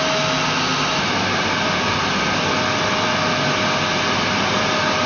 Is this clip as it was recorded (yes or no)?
yes